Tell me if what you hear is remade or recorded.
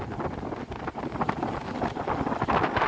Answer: recorded